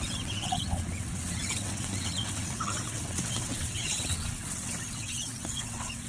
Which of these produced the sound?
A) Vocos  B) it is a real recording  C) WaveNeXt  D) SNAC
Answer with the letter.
C